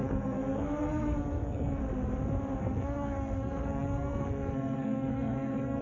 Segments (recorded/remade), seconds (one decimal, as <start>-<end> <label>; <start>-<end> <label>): 0.0-1.8 remade; 1.8-2.6 recorded; 2.6-5.8 remade